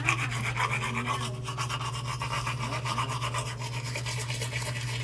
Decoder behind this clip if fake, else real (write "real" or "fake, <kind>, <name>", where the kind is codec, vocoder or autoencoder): real